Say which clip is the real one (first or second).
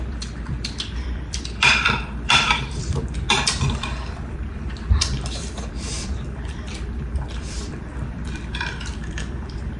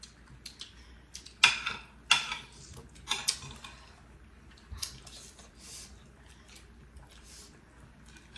second